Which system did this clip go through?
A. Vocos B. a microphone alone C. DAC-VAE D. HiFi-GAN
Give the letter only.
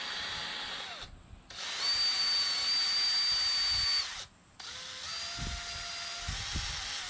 B